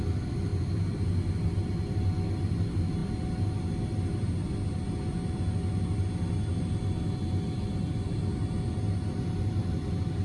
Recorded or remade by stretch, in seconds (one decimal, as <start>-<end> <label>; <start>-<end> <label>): 0.0-10.2 recorded